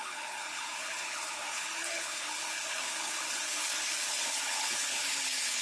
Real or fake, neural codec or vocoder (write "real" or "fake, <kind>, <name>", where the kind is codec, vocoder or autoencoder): fake, codec, HILCodec